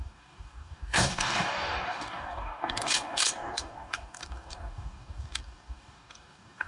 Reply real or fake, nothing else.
fake